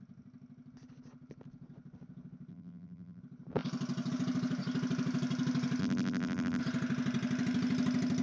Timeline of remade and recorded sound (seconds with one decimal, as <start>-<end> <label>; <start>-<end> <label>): 0.0-2.5 recorded; 2.5-3.2 remade; 3.2-5.8 recorded; 5.8-6.6 remade; 6.6-8.2 recorded